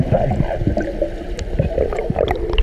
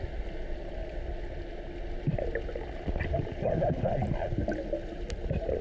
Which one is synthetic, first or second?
first